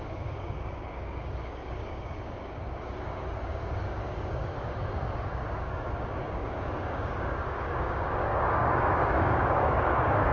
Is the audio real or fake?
fake